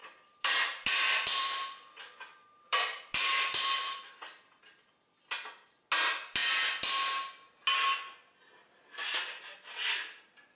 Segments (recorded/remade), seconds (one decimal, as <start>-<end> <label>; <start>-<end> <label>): 0.0-4.1 remade; 4.1-10.6 recorded

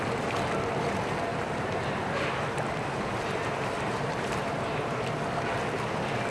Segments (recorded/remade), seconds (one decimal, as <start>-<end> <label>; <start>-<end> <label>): 0.0-1.3 recorded; 1.3-5.1 remade; 5.1-6.3 recorded

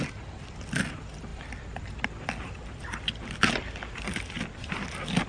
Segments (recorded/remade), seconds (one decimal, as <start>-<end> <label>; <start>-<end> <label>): 0.0-5.3 recorded

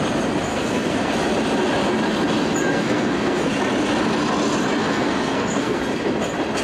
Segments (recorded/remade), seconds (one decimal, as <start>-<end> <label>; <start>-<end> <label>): 0.0-0.5 recorded; 0.5-1.1 remade; 1.1-2.6 recorded; 2.6-3.5 remade; 3.5-4.8 recorded; 4.8-5.8 remade; 5.8-6.6 recorded

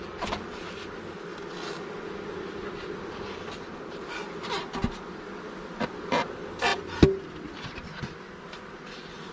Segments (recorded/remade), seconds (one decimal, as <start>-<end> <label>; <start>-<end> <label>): 0.0-9.3 recorded

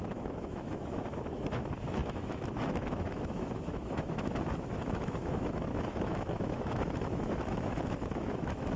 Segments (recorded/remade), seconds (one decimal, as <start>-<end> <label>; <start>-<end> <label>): 0.0-8.8 remade